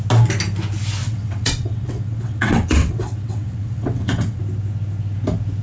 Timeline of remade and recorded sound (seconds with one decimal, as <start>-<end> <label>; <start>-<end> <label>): 0.0-1.0 recorded; 1.0-4.4 remade; 4.4-5.6 recorded

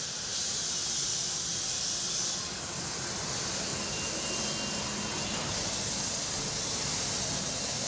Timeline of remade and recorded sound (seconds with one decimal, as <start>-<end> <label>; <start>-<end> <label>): 0.0-7.9 recorded